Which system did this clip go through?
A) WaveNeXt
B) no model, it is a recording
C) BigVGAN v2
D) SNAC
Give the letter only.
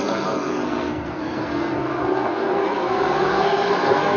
D